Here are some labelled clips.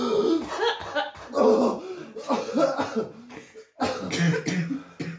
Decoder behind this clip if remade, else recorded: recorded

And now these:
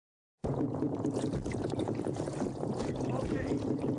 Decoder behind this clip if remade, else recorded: remade, vocoder, Vocos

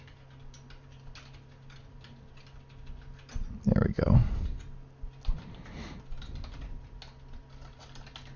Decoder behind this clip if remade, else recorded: recorded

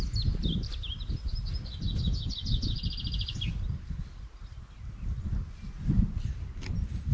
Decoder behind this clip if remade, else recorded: recorded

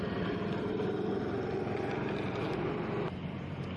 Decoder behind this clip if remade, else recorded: recorded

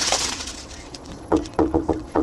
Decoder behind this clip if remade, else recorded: remade, vocoder, WaveNeXt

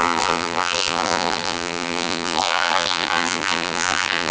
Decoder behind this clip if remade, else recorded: remade, vocoder, BigVGAN v2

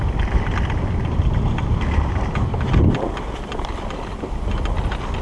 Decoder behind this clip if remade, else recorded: recorded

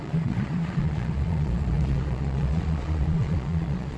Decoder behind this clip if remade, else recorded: remade, vocoder, Vocos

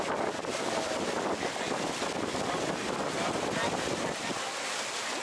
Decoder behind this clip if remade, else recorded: recorded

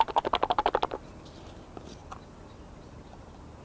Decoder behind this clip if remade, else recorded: recorded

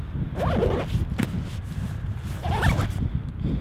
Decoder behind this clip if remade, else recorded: recorded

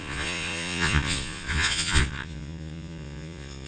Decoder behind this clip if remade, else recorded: remade, vocoder, Vocos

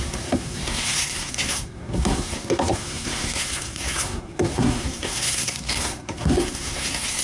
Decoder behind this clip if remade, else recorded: remade, codec, SNAC